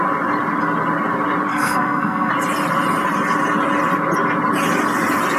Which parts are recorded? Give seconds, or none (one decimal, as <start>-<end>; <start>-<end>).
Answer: 0.0-1.5; 2.3-5.4